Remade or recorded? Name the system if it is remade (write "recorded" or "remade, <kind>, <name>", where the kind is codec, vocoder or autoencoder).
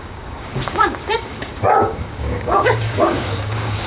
remade, codec, DAC